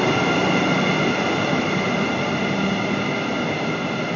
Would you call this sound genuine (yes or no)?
yes